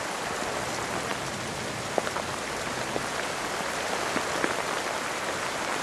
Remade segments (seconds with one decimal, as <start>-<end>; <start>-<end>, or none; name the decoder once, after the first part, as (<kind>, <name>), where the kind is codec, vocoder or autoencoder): none